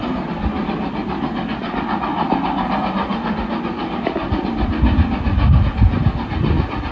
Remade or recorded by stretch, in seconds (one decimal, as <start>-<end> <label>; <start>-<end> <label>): 0.0-6.9 recorded